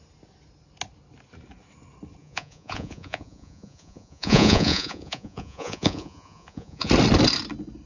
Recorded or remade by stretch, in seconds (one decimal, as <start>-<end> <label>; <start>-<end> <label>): 0.0-2.2 recorded; 2.2-6.9 remade; 6.9-7.9 recorded